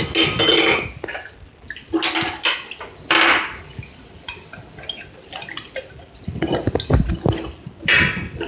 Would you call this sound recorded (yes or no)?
yes